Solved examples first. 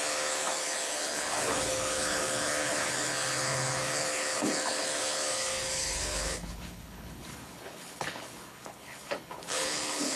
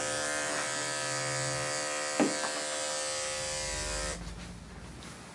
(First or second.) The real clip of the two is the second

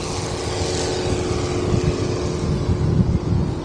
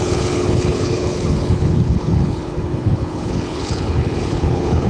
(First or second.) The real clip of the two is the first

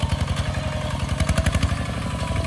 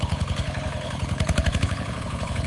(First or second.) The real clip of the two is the first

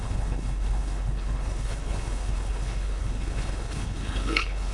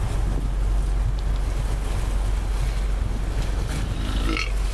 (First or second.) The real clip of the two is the second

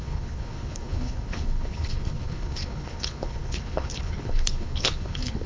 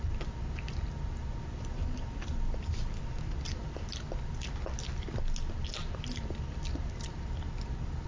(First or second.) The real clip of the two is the second